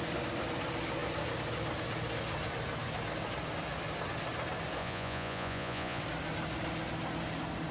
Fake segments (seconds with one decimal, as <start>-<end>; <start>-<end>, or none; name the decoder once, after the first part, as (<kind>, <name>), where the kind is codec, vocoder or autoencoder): 4.8-6.0 (vocoder, Vocos)